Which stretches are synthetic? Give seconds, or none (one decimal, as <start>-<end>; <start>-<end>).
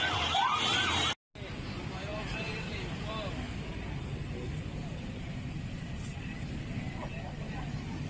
none